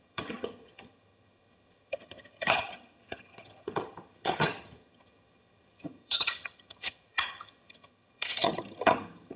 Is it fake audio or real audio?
fake